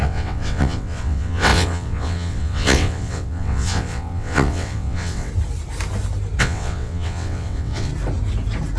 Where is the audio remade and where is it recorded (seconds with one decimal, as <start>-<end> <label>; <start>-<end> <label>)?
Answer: 0.0-5.3 remade; 5.3-6.4 recorded; 6.4-7.9 remade; 7.9-8.8 recorded